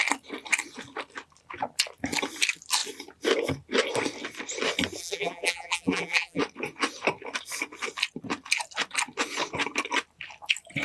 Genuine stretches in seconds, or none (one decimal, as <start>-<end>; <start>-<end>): 0.0-5.0; 6.4-10.8